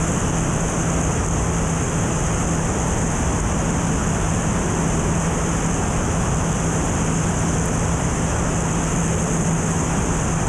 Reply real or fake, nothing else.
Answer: real